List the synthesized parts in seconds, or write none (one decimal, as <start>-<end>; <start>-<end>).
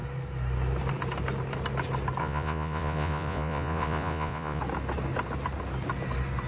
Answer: 2.2-4.6